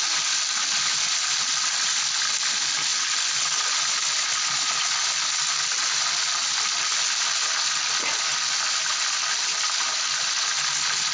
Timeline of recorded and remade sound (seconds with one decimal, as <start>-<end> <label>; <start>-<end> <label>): 0.0-11.1 recorded